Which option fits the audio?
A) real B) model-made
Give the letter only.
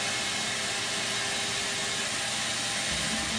A